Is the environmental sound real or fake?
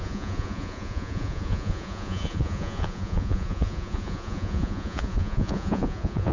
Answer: fake